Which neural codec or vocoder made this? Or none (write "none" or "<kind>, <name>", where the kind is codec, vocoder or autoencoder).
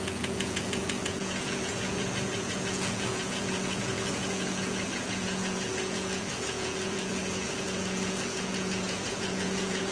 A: vocoder, Vocos